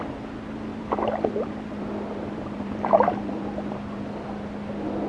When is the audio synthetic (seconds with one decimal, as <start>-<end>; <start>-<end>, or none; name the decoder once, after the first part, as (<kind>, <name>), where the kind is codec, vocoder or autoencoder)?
0.7-3.5 (vocoder, BigVGAN v2)